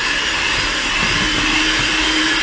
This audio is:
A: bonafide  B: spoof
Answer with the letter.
B